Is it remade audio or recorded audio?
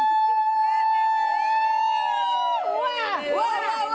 recorded